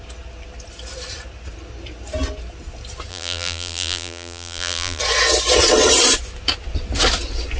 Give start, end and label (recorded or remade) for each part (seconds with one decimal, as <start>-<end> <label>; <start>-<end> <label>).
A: 0.0-3.1 recorded; 3.1-5.0 remade; 5.0-7.6 recorded